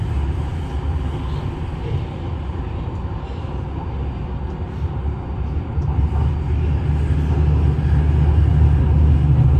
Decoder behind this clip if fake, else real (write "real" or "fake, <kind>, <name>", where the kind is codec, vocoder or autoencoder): real